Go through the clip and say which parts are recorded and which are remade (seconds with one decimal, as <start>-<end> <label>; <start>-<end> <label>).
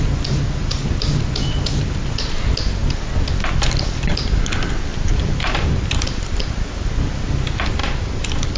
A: 0.0-0.6 recorded; 0.6-2.2 remade; 2.2-4.9 recorded; 4.9-5.9 remade; 5.9-7.8 recorded; 7.8-8.6 remade